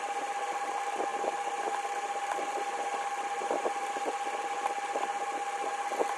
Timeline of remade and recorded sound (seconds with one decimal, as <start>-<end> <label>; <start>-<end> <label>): 0.0-6.2 recorded